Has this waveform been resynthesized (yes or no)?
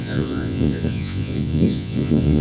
yes